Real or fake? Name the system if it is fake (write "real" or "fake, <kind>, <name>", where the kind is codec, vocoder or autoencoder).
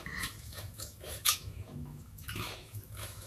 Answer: fake, autoencoder, DAC-VAE